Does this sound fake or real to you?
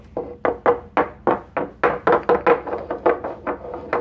real